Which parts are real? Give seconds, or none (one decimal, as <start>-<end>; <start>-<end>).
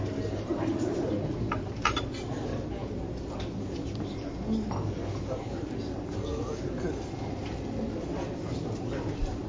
2.5-5.4